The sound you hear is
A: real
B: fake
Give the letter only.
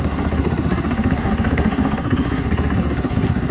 B